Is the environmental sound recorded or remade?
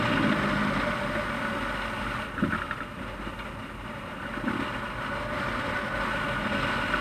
recorded